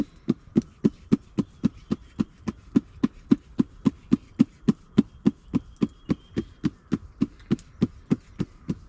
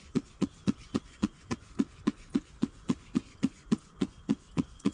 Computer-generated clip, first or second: second